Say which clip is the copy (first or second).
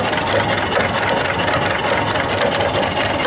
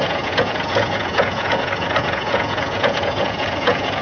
second